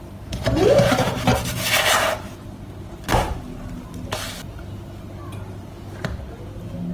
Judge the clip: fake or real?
real